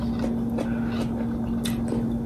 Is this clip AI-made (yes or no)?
no